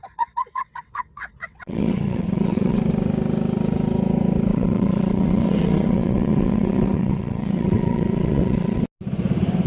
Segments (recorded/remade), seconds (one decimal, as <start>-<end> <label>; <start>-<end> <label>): 0.0-2.8 remade; 2.8-4.5 recorded; 4.5-8.8 remade; 8.8-9.7 recorded